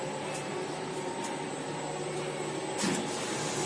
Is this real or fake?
real